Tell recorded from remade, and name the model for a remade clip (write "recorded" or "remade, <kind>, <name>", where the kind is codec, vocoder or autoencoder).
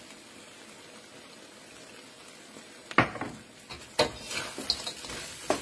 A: recorded